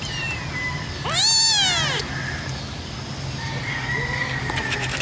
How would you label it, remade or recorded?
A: recorded